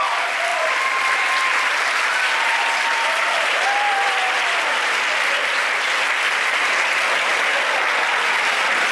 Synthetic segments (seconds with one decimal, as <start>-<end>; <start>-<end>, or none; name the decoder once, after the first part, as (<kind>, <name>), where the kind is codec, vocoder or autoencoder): 0.0-0.5 (vocoder, BigVGAN v2); 2.8-7.3; 8.2-8.9